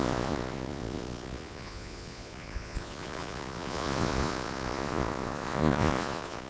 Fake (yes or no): yes